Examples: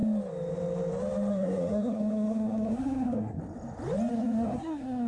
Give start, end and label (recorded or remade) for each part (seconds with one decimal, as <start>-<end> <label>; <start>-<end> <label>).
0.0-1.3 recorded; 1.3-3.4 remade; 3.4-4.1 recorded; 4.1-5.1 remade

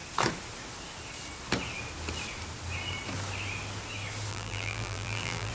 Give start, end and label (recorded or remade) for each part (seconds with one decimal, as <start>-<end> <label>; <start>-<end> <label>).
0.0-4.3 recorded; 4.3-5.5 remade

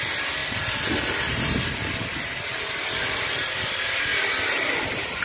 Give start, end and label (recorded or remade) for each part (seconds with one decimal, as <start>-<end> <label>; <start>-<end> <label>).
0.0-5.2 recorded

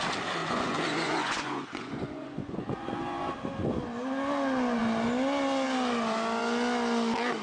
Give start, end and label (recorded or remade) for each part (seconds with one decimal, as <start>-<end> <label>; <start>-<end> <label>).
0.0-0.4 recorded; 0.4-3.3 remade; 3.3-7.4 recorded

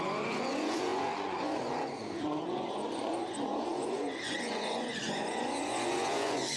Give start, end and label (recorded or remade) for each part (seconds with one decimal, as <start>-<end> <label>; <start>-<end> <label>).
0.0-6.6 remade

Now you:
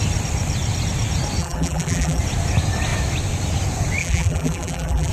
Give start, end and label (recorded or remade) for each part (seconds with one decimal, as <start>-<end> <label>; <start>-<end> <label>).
0.0-1.4 recorded; 1.4-2.2 remade; 2.2-4.0 recorded; 4.0-5.1 remade

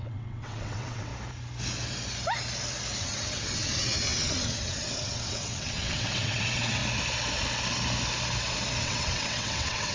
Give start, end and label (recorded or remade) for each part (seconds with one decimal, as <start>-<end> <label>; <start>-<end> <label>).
0.0-1.1 remade; 1.1-3.0 recorded; 3.0-6.8 remade; 6.8-8.8 recorded; 8.8-9.9 remade

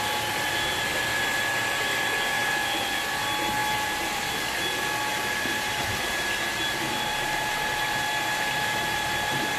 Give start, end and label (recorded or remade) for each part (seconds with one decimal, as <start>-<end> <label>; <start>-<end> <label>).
0.0-0.9 recorded; 0.9-1.4 remade; 1.4-3.6 recorded; 3.6-4.2 remade; 4.2-5.1 recorded; 5.1-9.6 remade